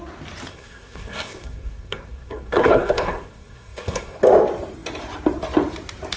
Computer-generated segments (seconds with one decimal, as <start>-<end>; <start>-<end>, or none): 0.5-4.2

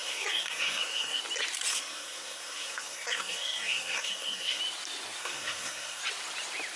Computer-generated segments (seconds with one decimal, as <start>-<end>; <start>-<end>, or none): 0.0-1.2; 1.7-4.6; 5.2-6.0

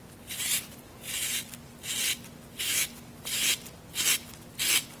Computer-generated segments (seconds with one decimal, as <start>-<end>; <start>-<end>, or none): none

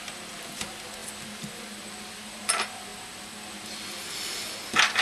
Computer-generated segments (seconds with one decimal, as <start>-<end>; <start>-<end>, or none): none